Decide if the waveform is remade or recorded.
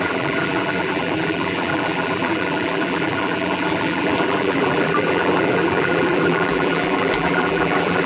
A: remade